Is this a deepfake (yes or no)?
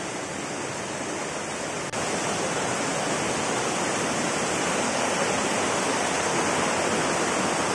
no